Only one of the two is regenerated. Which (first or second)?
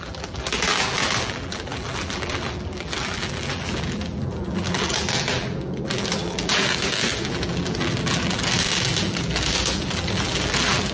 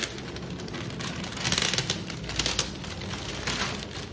first